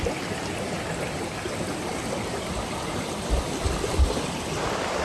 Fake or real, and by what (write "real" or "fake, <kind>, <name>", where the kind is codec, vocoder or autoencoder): real